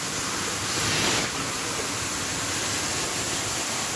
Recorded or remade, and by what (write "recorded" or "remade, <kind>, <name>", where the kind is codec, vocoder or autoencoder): recorded